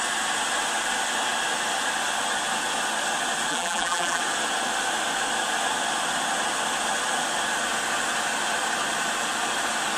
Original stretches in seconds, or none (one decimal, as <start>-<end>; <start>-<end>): 0.0-3.5; 4.2-10.0